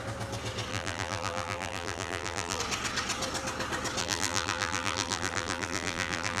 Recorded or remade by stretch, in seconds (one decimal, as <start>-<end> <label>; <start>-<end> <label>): 0.0-0.7 recorded; 0.7-2.6 remade; 2.6-4.0 recorded; 4.0-6.4 remade